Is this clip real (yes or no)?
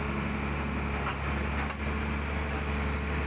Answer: yes